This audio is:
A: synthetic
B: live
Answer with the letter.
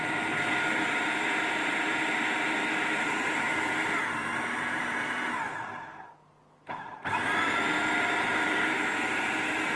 B